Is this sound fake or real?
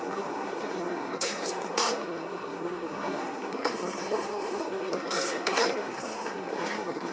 fake